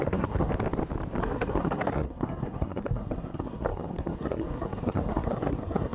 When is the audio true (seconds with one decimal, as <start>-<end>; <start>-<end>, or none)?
0.5-1.2